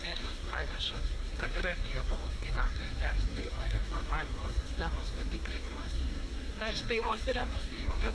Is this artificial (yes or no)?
yes